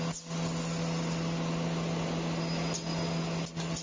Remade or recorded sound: recorded